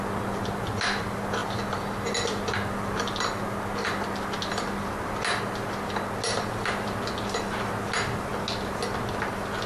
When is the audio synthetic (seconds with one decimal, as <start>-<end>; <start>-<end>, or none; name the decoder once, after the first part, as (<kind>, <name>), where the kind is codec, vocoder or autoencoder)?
none